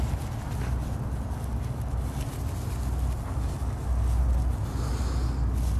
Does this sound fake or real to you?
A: real